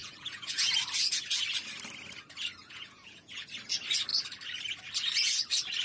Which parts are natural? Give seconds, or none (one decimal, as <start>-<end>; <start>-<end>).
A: 0.7-2.6; 3.5-5.8